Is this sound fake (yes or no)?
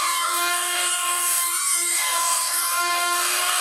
yes